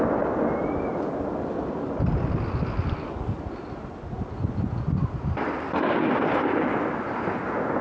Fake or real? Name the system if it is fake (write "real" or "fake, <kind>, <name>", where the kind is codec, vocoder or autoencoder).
real